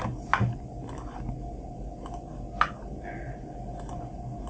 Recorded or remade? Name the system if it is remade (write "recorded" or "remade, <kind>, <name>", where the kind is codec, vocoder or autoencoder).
recorded